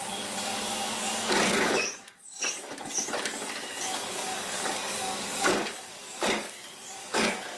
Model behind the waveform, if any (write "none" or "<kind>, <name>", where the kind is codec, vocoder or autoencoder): codec, DAC